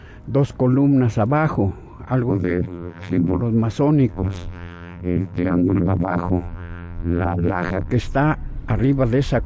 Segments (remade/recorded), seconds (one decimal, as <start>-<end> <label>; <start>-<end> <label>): 0.0-2.3 recorded; 2.3-3.4 remade; 3.4-4.1 recorded; 4.1-7.9 remade; 7.9-9.5 recorded